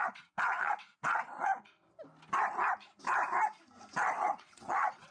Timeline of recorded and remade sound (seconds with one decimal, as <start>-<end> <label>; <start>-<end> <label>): 0.0-1.5 remade; 1.5-4.2 recorded; 4.2-5.1 remade